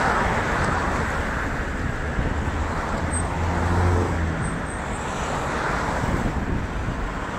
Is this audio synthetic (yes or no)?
no